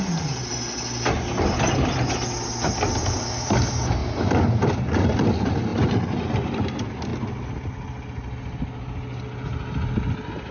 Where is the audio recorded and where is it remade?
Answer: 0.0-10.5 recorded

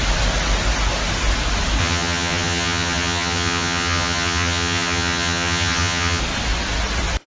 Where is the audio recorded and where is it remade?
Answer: 0.0-1.8 recorded; 1.8-6.2 remade; 6.2-7.3 recorded

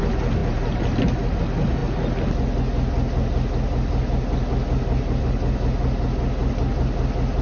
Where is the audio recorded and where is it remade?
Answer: 0.0-0.4 recorded; 0.4-1.4 remade; 1.4-7.4 recorded

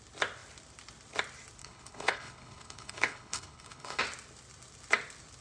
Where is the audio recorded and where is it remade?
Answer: 0.0-1.6 recorded; 1.6-4.0 remade; 4.0-5.4 recorded

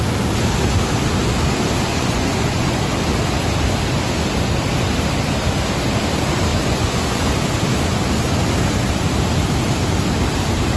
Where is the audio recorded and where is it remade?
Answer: 0.0-1.9 recorded; 1.9-2.8 remade; 2.8-6.5 recorded; 6.5-7.3 remade; 7.3-10.8 recorded